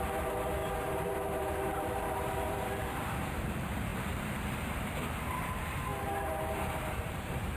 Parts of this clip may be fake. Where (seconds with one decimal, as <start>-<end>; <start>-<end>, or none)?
0.0-7.6